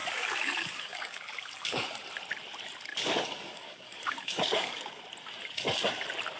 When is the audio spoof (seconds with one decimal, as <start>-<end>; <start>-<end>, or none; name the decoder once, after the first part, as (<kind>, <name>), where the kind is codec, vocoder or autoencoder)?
0.0-1.9 (codec, DAC); 2.9-5.0